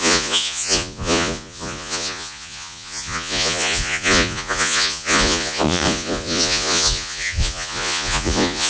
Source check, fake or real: fake